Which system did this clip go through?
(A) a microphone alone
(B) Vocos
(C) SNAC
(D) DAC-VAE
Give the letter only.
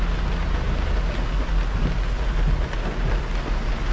A